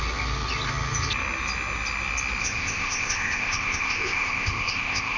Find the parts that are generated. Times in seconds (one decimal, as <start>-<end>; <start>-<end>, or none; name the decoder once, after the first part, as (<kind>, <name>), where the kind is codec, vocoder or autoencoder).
2.4-5.2 (codec, ZipCodec)